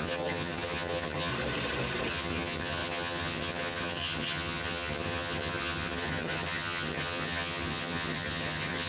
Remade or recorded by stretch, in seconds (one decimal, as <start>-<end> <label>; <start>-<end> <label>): 0.0-1.3 remade; 1.3-2.1 recorded; 2.1-8.9 remade